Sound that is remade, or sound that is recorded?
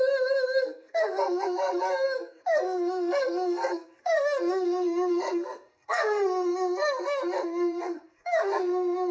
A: remade